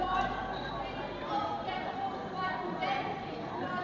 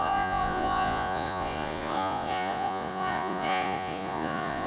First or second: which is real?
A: first